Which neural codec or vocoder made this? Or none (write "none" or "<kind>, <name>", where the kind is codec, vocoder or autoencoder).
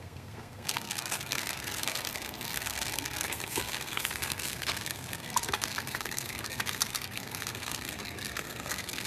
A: codec, SNAC